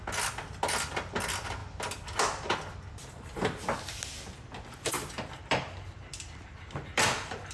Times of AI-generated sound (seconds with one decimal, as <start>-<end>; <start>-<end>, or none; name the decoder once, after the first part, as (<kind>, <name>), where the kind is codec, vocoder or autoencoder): none